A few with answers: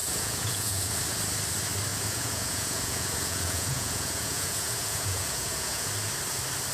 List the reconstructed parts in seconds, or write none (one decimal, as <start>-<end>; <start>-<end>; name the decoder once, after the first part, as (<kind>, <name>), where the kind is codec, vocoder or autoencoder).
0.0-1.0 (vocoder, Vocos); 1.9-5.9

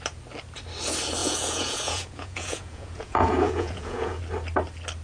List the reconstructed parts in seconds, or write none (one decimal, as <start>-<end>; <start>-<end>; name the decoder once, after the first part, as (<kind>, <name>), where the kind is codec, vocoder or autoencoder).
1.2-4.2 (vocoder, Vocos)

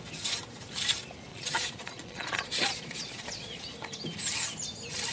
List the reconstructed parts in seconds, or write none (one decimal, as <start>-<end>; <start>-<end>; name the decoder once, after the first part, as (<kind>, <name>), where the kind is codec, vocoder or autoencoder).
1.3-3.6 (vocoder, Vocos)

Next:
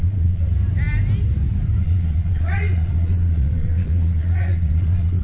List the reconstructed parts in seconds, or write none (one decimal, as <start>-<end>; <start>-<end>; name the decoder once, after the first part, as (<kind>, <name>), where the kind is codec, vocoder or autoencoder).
0.0-0.5 (vocoder, Vocos); 1.8-5.2